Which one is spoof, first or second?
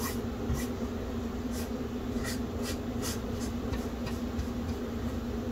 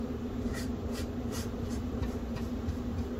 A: second